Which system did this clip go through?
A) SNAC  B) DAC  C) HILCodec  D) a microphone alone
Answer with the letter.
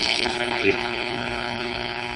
C